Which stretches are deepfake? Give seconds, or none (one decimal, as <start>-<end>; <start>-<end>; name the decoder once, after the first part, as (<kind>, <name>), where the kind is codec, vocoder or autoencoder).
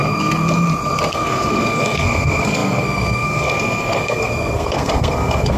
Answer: 1.1-5.6 (codec, SNAC)